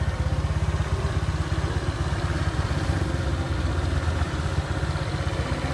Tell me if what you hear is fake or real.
real